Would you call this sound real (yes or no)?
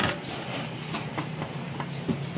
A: yes